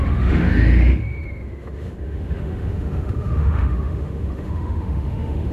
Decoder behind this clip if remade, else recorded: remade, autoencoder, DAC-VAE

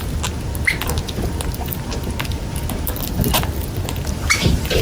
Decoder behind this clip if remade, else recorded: recorded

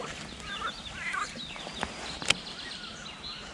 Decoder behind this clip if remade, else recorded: recorded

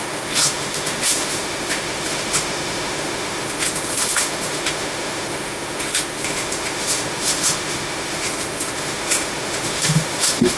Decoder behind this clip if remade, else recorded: remade, autoencoder, DAC-VAE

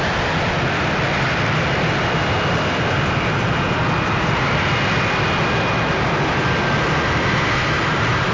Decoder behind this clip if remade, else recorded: recorded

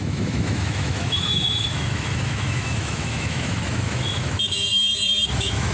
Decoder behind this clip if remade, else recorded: remade, autoencoder, DAC-VAE